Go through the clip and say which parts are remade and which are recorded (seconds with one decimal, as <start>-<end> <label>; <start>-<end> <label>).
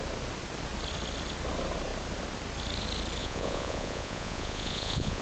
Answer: 0.0-3.2 recorded; 3.2-5.2 remade